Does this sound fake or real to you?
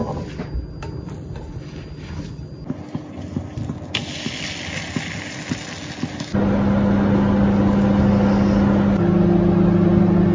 real